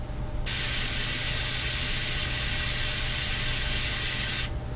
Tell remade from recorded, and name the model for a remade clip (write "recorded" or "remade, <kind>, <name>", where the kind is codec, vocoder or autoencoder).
recorded